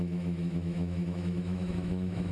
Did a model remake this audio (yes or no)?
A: yes